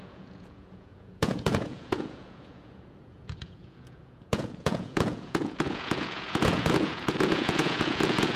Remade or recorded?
remade